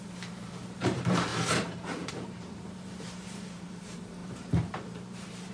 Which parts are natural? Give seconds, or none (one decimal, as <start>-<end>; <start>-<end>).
none